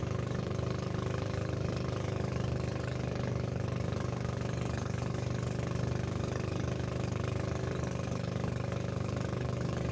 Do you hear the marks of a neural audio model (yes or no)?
yes